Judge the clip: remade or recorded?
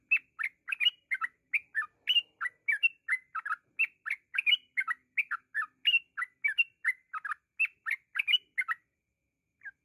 recorded